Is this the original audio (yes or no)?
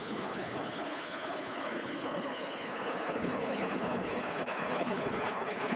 no